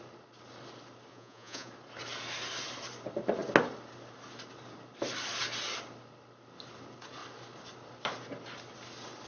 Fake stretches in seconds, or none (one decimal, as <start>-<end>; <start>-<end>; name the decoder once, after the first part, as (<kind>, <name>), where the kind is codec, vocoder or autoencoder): 1.1-1.7 (vocoder, Vocos)

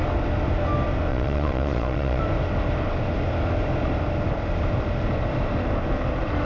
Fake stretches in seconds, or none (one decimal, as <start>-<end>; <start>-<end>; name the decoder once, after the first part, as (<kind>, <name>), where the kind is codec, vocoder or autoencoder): 1.1-2.2 (vocoder, Vocos)

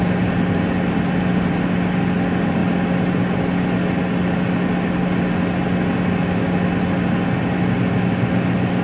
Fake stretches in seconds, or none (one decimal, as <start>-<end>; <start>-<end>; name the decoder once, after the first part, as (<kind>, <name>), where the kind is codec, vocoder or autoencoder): none

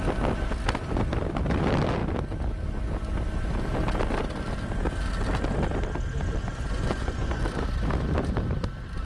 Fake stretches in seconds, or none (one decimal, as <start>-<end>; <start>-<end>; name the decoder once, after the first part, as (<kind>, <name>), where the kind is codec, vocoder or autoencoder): 6.4-7.4 (vocoder, Vocos)

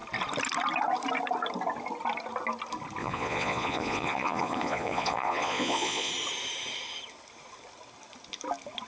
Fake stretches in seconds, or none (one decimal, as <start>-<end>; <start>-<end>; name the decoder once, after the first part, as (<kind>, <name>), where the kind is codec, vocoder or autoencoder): 3.0-6.1 (vocoder, Vocos)